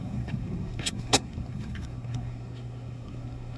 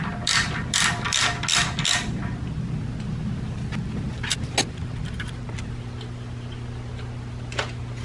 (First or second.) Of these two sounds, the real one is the second